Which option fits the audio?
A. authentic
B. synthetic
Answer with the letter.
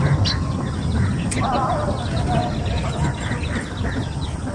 A